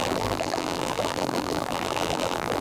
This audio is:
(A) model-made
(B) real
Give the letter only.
A